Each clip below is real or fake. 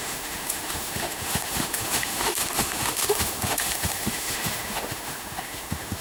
fake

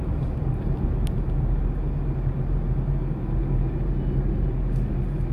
real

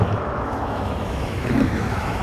fake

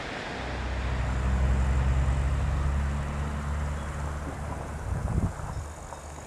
real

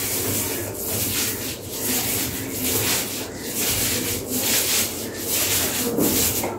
real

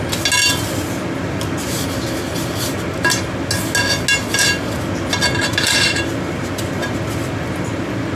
real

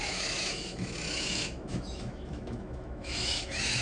fake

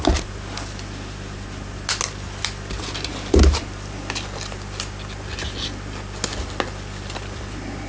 real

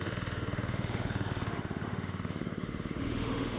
fake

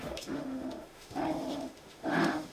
fake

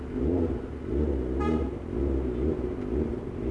real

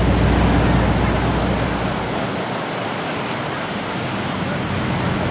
real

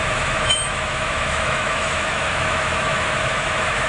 fake